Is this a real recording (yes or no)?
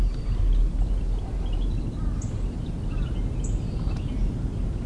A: yes